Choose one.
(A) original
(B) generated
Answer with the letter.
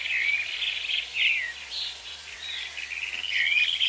A